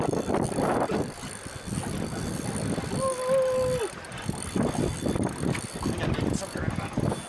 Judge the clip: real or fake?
real